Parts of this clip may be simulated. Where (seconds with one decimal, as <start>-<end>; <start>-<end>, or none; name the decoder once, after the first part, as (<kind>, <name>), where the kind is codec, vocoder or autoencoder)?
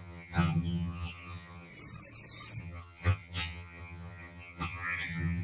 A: 0.0-1.7 (vocoder, HiFi-GAN); 2.6-5.4